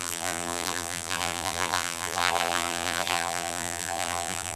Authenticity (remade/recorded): remade